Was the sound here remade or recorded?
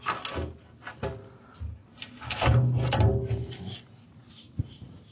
recorded